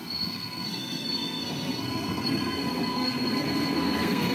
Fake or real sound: fake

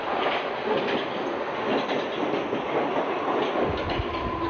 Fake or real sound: real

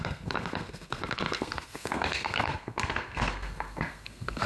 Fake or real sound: fake